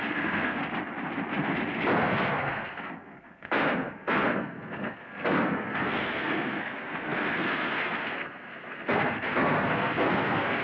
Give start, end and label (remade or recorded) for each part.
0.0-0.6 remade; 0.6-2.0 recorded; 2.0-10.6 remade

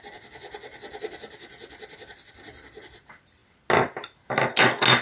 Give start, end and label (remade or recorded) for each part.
0.0-5.0 recorded

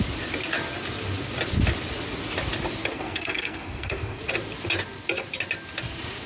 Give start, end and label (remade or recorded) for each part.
0.0-2.9 recorded; 2.9-4.2 remade; 4.2-6.3 recorded

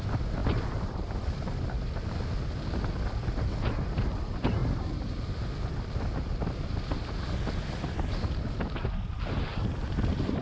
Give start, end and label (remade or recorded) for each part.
0.0-10.4 recorded

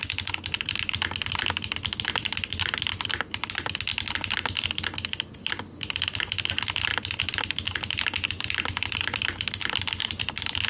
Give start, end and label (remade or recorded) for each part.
0.0-10.7 recorded

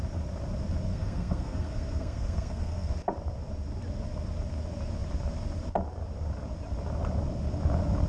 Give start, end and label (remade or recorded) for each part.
0.0-0.9 recorded; 0.9-2.9 remade; 2.9-8.1 recorded

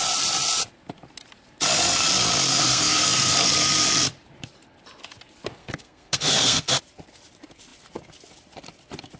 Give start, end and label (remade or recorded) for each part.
0.0-2.5 recorded; 2.5-3.5 remade; 3.5-5.6 recorded; 5.6-6.8 remade; 6.8-9.2 recorded

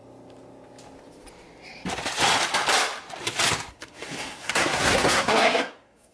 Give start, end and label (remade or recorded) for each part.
0.0-3.7 recorded; 3.7-6.1 remade